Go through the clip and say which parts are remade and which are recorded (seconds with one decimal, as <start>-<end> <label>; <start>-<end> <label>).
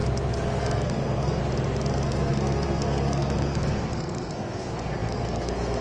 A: 0.0-0.6 recorded; 0.6-1.4 remade; 1.4-1.9 recorded; 1.9-5.8 remade